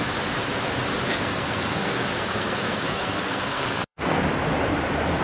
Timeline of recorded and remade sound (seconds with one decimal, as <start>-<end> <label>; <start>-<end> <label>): 0.0-1.1 recorded; 1.1-4.2 remade; 4.2-5.2 recorded